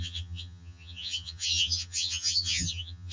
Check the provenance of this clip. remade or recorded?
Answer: remade